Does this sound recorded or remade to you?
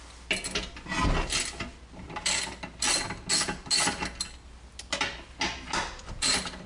recorded